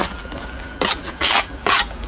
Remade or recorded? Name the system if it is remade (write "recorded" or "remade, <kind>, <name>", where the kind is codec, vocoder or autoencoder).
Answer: remade, vocoder, BigVGAN v2